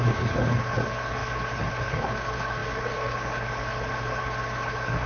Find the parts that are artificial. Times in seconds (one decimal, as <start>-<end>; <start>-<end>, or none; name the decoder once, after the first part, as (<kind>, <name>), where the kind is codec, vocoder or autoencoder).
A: 0.0-5.1 (codec, HILCodec)